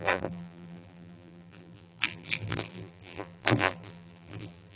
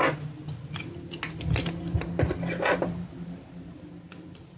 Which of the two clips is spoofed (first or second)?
first